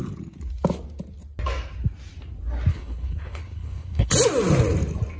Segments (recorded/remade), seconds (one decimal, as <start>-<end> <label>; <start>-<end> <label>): 0.0-2.7 recorded; 2.7-4.1 remade; 4.1-5.2 recorded